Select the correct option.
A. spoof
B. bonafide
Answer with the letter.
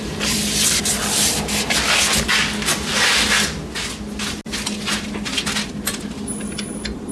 B